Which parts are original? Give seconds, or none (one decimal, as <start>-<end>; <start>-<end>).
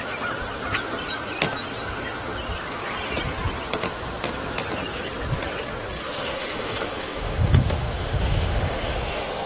0.0-6.0